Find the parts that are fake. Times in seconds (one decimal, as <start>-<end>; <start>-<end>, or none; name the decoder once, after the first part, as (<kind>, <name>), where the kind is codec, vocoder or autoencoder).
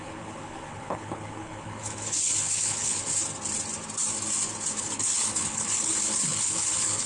0.0-3.1 (codec, HILCodec); 4.8-7.1